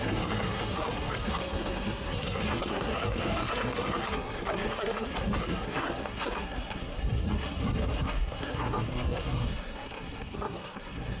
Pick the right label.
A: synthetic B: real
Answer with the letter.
A